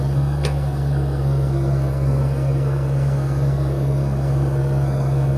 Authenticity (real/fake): fake